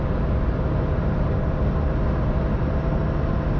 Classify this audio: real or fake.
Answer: real